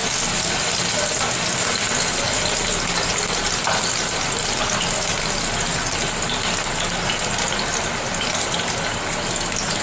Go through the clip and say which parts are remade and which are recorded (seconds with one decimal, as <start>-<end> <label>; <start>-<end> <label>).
0.0-9.8 recorded